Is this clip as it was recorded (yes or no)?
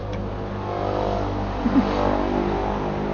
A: yes